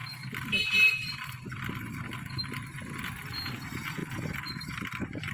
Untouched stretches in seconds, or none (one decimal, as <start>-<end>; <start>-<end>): 0.0-5.3